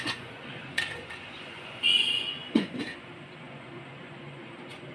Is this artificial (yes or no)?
yes